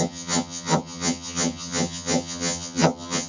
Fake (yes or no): yes